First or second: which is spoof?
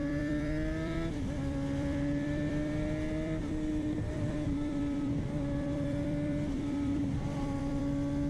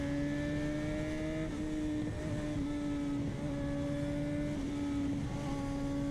first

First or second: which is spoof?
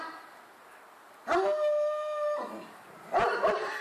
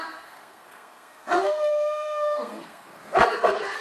second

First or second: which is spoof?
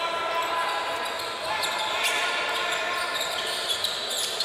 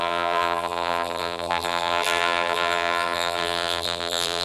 second